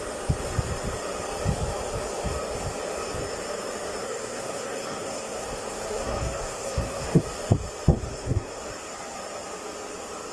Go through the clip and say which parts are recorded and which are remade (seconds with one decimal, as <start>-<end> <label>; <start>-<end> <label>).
0.0-4.0 recorded; 4.0-7.2 remade; 7.2-7.9 recorded; 7.9-8.6 remade; 8.6-10.3 recorded